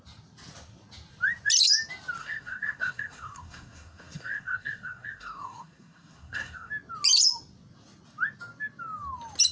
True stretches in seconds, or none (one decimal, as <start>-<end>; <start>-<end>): 0.0-2.2; 6.7-9.5